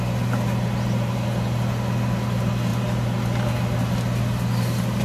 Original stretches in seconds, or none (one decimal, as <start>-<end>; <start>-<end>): 0.0-5.0